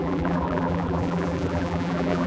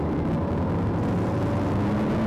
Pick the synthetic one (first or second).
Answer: first